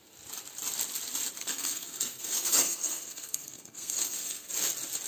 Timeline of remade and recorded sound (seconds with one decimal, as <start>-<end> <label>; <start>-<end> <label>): 0.0-1.4 recorded; 1.4-4.5 remade; 4.5-5.1 recorded